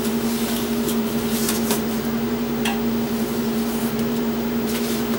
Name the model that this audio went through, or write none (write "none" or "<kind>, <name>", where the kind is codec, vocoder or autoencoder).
vocoder, BigVGAN v2